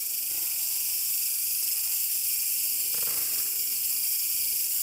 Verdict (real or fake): fake